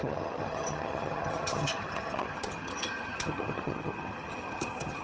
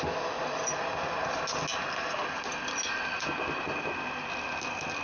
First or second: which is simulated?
first